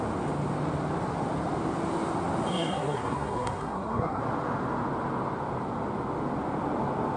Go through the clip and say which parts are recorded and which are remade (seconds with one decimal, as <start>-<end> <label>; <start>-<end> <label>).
0.0-2.5 recorded; 2.5-4.2 remade; 4.2-7.2 recorded